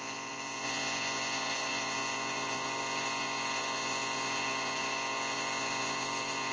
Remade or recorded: remade